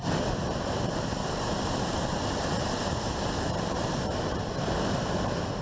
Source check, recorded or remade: recorded